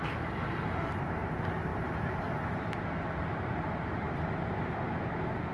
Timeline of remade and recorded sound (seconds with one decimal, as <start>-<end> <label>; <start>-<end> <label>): 0.0-1.7 recorded; 1.7-4.8 remade; 4.8-5.5 recorded